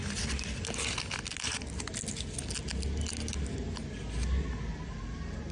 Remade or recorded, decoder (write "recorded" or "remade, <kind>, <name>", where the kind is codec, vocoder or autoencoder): recorded